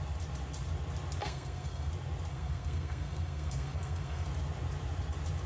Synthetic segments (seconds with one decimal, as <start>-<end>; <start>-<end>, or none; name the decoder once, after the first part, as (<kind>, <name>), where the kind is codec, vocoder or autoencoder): 1.2-1.9 (codec, SNAC); 2.3-4.3